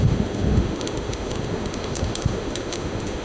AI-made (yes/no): yes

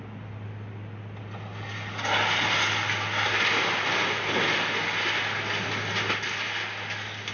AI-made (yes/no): no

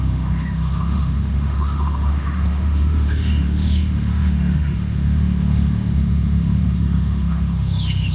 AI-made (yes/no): yes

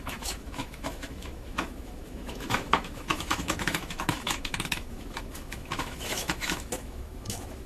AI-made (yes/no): yes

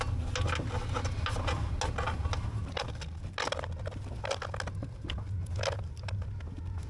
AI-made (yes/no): no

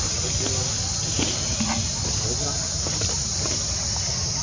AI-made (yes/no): no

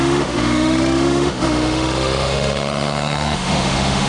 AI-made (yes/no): yes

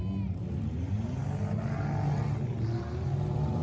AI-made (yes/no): no